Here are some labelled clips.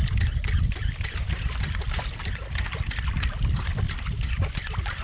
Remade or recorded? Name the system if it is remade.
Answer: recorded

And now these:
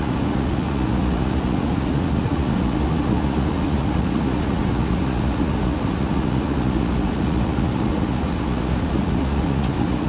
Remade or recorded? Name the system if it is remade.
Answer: remade, vocoder, Vocos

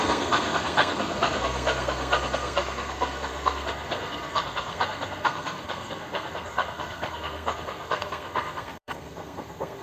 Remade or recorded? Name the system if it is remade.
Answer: remade, codec, SNAC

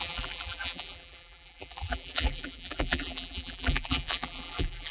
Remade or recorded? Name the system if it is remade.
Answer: remade, vocoder, BigVGAN v2